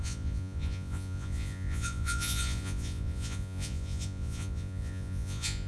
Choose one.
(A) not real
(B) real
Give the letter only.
A